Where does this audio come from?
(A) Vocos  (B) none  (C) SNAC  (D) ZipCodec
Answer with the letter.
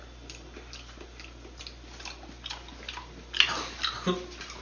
B